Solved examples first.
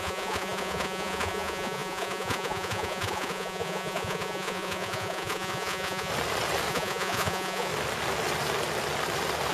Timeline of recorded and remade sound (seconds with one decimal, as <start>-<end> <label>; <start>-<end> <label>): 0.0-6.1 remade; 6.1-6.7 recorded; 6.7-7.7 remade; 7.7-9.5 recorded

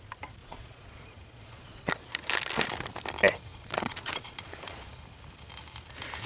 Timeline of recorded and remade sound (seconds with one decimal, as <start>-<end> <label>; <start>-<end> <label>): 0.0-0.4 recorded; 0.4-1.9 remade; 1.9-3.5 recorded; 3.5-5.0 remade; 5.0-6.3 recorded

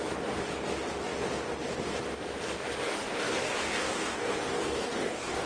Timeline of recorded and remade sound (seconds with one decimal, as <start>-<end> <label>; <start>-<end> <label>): 0.0-2.8 recorded; 2.8-5.5 remade